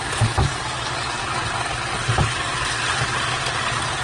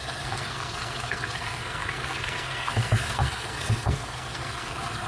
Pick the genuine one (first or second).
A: first